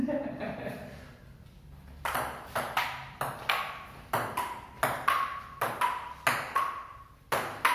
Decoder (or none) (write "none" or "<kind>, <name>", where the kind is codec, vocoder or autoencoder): none